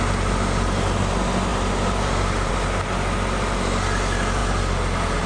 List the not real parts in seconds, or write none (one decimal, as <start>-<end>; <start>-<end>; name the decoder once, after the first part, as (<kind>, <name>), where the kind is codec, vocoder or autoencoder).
1.5-2.5 (vocoder, BigVGAN v2)